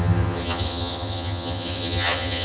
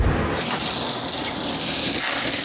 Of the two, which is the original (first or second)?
second